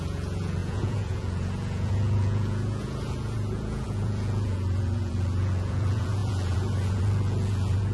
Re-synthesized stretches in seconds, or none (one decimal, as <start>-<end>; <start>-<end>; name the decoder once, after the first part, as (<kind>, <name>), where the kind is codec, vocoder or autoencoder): 0.0-7.9 (vocoder, Vocos)